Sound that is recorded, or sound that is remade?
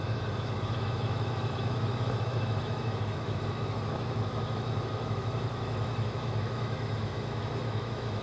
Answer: remade